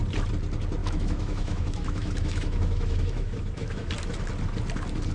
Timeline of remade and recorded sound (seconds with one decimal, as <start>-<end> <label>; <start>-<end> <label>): 0.0-0.8 recorded; 0.8-3.9 remade; 3.9-5.1 recorded

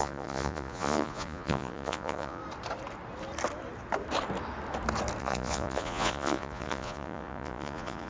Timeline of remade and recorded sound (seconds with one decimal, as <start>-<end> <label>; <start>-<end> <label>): 0.0-2.4 remade; 2.4-5.2 recorded; 5.2-8.1 remade